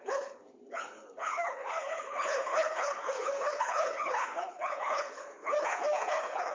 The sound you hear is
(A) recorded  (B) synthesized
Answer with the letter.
B